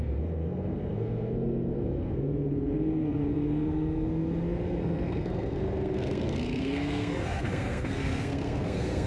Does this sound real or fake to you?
fake